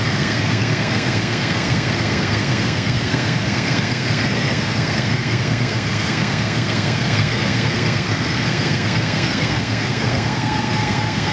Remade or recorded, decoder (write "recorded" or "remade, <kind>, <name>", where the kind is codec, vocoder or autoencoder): remade, codec, SNAC